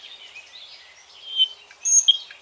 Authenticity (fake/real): real